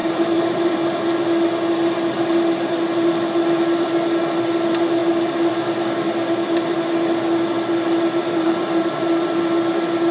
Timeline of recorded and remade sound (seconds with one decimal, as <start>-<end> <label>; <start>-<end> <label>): 0.0-0.8 remade; 0.8-8.2 recorded; 8.2-8.9 remade; 8.9-10.1 recorded